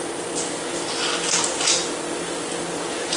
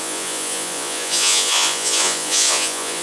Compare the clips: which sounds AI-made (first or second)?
second